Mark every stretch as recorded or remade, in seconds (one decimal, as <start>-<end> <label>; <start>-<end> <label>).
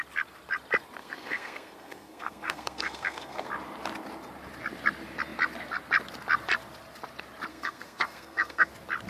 0.0-1.0 recorded; 1.0-3.5 remade; 3.5-7.5 recorded; 7.5-8.7 remade; 8.7-9.1 recorded